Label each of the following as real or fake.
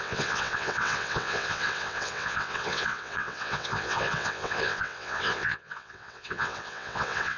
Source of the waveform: fake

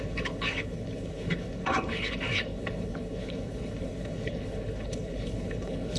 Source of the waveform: fake